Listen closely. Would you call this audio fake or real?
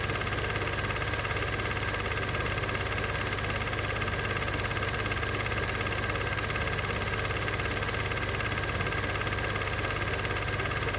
real